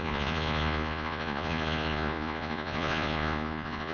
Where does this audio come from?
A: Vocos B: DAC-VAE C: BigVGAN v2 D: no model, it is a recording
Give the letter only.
A